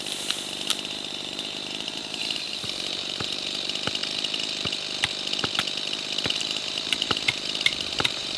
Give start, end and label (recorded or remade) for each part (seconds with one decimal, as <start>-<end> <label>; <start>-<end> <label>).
0.0-4.0 remade; 4.0-6.4 recorded; 6.4-8.4 remade